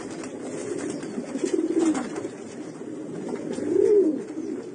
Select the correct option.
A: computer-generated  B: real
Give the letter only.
B